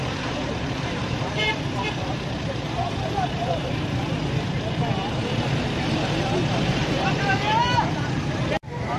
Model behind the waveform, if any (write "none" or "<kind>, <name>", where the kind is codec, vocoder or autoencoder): vocoder, BigVGAN v2